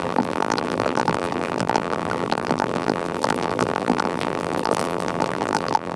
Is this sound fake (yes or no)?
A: yes